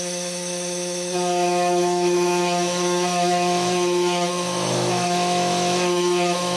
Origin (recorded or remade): remade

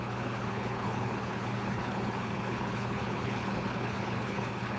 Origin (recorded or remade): remade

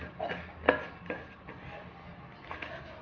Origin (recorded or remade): recorded